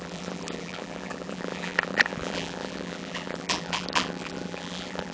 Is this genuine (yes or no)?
no